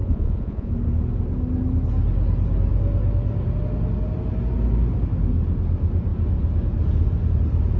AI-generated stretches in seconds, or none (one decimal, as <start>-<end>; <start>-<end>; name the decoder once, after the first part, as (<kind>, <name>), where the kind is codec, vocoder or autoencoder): 0.0-0.7 (vocoder, Vocos)